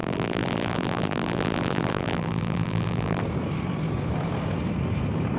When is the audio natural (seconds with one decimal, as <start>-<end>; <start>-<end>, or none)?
3.2-5.4